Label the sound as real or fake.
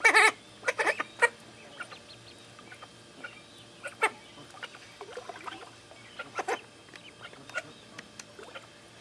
real